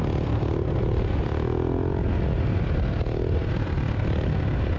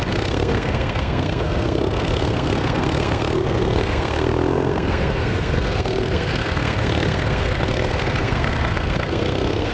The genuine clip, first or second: first